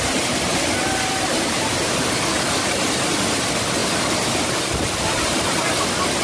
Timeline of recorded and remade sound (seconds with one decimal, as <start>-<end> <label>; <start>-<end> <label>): 0.0-6.2 recorded